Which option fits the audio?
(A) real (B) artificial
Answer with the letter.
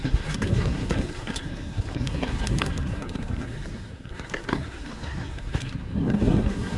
B